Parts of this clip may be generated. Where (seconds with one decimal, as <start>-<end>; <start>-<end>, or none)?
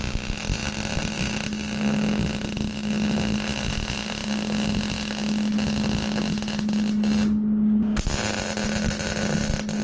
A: none